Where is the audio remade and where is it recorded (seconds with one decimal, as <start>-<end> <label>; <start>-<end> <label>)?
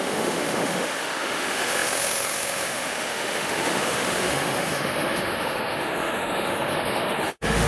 0.0-7.7 remade